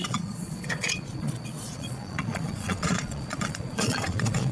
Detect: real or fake fake